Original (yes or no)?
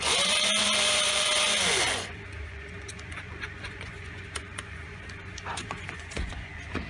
no